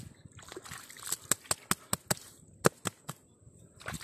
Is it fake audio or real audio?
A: real